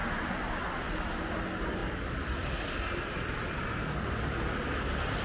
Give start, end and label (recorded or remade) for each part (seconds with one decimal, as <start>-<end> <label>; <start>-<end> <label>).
0.0-5.2 recorded